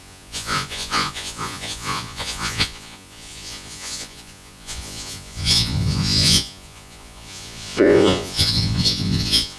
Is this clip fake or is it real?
fake